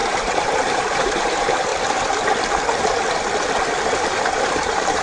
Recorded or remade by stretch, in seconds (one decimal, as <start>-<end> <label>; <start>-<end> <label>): 0.0-1.7 remade; 1.7-4.1 recorded; 4.1-5.0 remade